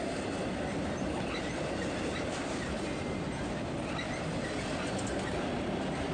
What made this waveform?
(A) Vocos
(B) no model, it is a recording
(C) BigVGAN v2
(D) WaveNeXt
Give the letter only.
B